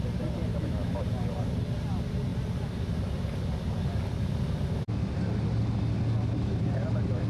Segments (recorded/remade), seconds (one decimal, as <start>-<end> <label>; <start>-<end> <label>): 0.0-0.5 recorded; 0.5-1.0 remade; 1.0-7.3 recorded